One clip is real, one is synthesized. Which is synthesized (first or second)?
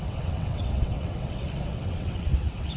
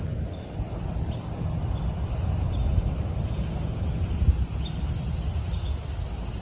first